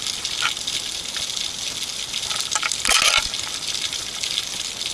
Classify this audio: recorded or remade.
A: recorded